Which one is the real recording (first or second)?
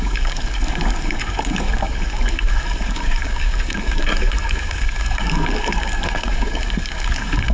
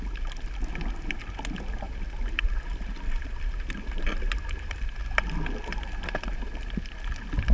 second